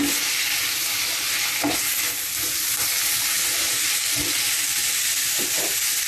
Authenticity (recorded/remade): recorded